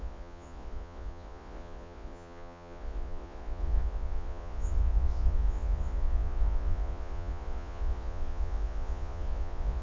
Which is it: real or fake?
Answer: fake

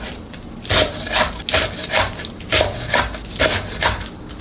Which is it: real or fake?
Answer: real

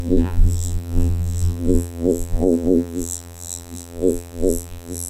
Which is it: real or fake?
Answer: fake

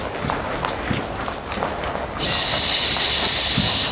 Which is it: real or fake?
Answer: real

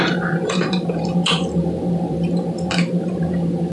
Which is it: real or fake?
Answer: fake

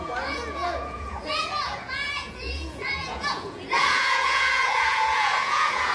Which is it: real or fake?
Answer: fake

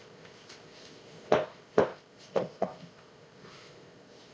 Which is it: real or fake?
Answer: fake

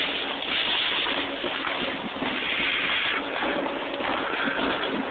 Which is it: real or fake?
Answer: real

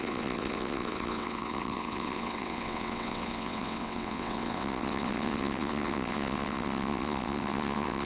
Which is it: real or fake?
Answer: fake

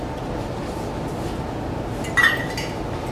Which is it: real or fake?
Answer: real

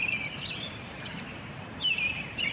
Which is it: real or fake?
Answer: fake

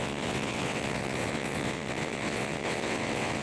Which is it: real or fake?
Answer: fake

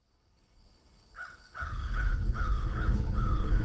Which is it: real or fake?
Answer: fake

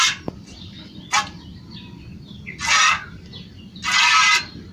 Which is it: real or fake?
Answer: real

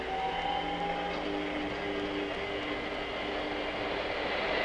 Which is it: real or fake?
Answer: real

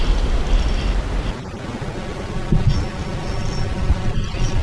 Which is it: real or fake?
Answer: real